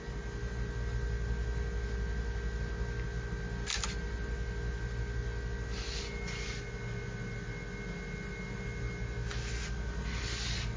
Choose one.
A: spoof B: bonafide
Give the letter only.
B